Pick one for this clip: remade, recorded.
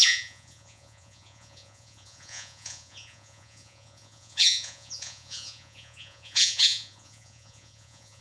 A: remade